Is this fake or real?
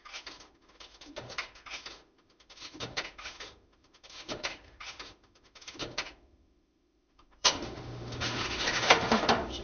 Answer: fake